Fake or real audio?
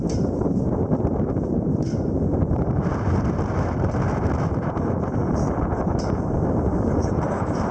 fake